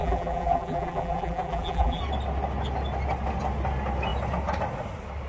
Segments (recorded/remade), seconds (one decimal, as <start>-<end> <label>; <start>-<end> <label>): 0.0-2.0 remade; 2.0-5.3 recorded